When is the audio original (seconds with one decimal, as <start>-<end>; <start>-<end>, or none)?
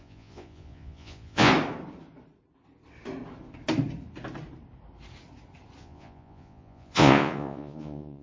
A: 1.5-5.8